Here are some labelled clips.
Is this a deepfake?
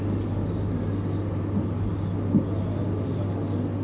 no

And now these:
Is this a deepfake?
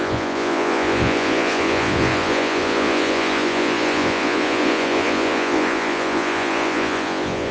yes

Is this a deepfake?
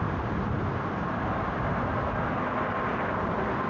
no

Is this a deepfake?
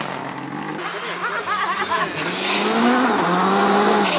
no